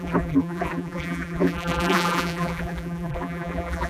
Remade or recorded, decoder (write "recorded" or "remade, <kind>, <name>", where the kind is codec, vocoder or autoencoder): remade, vocoder, BigVGAN v2